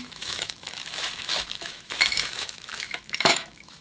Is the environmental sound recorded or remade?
remade